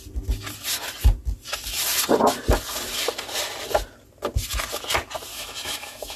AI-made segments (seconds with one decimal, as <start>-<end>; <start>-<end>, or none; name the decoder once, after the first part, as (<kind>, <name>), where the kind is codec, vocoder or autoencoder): 5.3-6.2 (autoencoder, DAC-VAE)